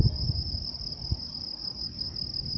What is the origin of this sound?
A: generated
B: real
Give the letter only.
B